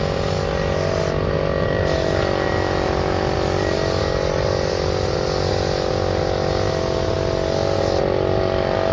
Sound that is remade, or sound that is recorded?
recorded